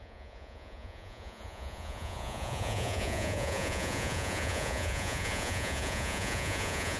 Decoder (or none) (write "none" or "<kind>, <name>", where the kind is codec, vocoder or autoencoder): vocoder, Vocos